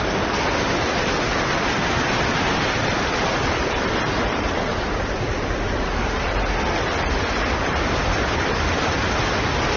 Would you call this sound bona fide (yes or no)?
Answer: yes